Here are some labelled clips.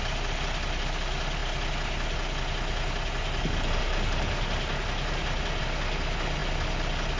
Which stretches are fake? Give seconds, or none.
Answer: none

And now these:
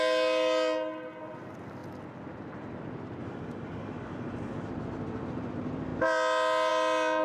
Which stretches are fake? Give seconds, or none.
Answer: 3.2-4.7